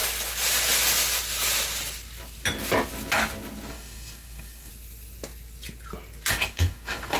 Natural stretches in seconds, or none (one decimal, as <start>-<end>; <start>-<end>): 0.0-3.7; 4.7-6.3